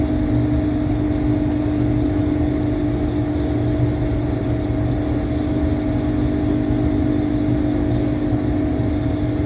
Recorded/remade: recorded